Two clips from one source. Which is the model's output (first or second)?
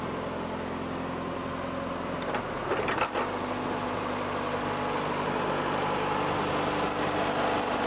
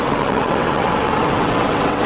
second